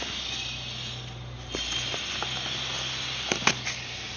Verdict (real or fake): real